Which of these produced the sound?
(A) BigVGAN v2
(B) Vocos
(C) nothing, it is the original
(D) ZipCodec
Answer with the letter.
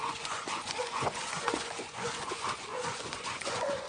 B